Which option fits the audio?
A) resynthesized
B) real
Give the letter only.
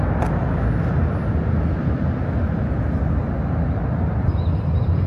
B